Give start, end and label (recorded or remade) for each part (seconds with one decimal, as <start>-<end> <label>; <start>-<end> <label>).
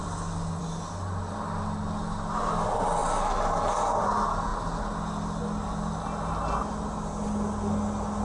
0.0-8.2 recorded